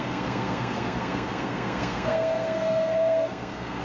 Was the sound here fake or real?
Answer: fake